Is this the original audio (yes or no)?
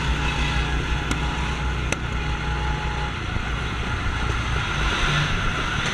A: yes